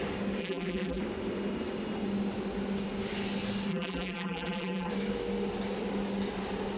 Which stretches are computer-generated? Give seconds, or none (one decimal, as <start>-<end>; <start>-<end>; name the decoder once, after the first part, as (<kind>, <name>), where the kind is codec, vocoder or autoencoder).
0.4-1.0 (vocoder, BigVGAN v2); 3.7-4.9